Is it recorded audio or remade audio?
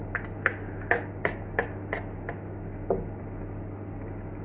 recorded